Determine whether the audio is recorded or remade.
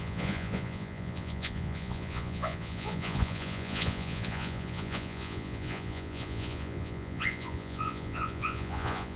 remade